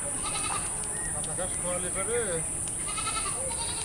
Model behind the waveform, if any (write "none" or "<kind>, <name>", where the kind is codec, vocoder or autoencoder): none